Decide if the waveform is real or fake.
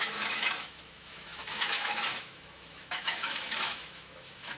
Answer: fake